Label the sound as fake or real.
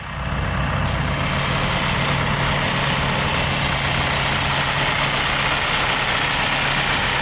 real